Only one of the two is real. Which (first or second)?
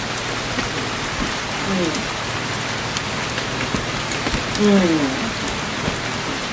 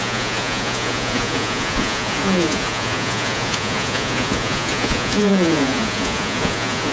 first